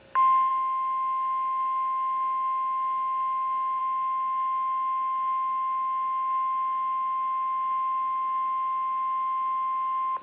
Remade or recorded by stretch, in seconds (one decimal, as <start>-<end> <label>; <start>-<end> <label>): 0.0-10.2 recorded